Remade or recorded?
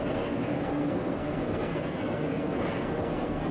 remade